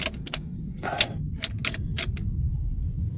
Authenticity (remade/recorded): recorded